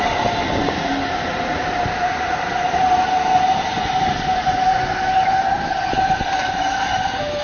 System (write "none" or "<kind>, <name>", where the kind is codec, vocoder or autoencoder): none